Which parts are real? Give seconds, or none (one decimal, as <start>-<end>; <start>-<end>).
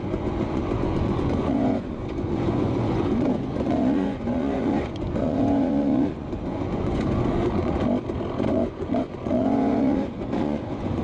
7.8-8.5